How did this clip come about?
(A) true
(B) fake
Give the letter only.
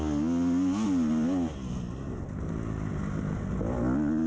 A